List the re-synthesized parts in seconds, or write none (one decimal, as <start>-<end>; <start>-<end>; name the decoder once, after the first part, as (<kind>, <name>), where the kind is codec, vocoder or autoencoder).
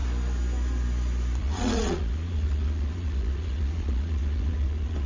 1.4-5.1 (vocoder, Vocos)